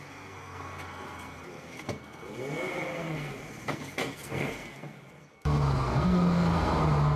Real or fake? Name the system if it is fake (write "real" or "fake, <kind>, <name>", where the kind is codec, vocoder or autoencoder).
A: fake, codec, SNAC